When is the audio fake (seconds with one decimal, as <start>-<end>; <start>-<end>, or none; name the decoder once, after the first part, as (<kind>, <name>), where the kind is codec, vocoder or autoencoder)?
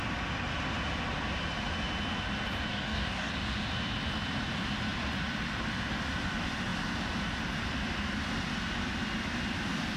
2.7-3.3 (codec, DAC)